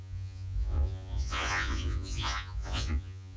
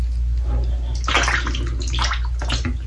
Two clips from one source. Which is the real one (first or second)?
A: second